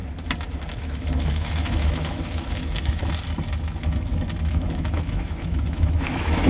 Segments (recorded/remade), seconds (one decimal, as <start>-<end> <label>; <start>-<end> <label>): 0.0-0.8 recorded; 0.8-3.0 remade; 3.0-4.5 recorded; 4.5-6.5 remade